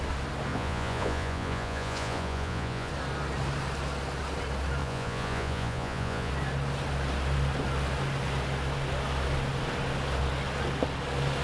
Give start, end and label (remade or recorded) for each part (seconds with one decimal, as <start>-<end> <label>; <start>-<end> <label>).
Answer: 0.0-0.5 recorded; 0.5-2.9 remade; 2.9-4.8 recorded; 4.8-6.3 remade; 6.3-11.4 recorded